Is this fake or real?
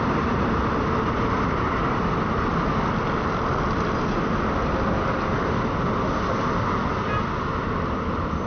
real